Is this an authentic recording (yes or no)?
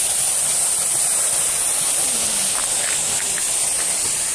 yes